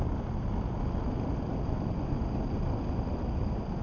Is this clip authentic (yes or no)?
yes